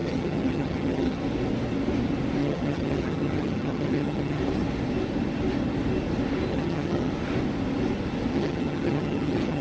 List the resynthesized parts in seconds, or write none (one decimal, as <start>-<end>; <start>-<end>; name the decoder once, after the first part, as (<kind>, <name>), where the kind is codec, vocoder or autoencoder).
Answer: 0.0-1.2 (vocoder, HiFi-GAN); 2.4-4.4; 6.5-7.1; 8.3-9.6